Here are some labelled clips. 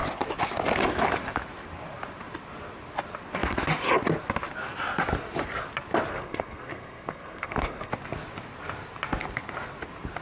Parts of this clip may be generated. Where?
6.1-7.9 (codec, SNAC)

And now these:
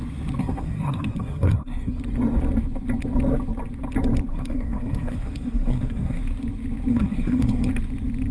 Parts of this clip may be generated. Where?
0.4-2.0 (codec, SNAC); 4.3-6.2; 6.9-7.7

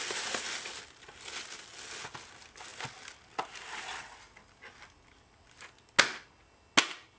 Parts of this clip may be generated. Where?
none

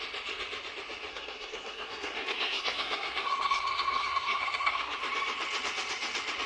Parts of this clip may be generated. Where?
1.1-5.0 (codec, SNAC)

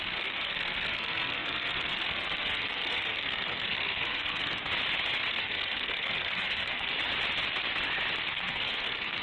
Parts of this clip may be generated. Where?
0.0-4.7 (codec, SNAC); 5.3-6.9; 8.3-9.2

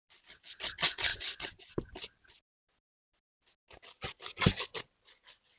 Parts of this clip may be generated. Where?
none

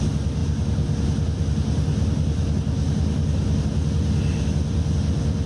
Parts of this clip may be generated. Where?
none

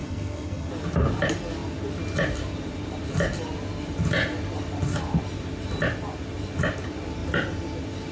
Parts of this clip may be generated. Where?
0.0-0.7 (codec, SNAC)